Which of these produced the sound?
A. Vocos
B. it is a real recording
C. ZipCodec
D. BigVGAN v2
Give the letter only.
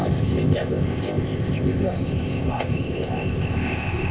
C